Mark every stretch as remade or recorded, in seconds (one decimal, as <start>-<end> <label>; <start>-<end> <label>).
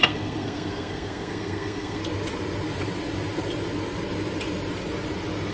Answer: 0.0-2.0 remade; 2.0-5.5 recorded